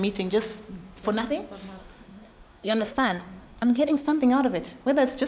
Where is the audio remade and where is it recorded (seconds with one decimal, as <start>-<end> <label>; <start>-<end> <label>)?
0.0-1.8 recorded; 1.8-4.2 remade; 4.2-5.3 recorded